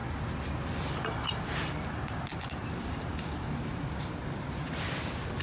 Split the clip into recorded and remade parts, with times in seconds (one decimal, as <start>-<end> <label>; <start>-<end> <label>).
0.0-2.6 recorded; 2.6-4.8 remade; 4.8-5.4 recorded